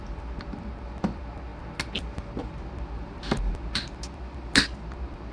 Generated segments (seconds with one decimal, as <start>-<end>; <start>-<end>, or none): none